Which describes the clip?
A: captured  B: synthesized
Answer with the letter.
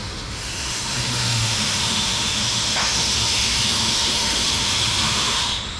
B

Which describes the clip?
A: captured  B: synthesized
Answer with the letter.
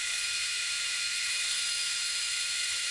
B